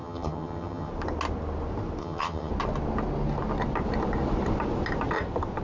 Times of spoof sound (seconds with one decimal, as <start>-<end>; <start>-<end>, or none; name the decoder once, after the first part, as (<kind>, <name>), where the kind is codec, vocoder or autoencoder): 0.0-0.9 (vocoder, HiFi-GAN); 2.0-2.5